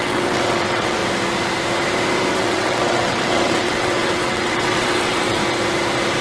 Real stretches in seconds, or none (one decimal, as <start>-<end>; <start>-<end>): 1.0-2.3; 5.4-6.2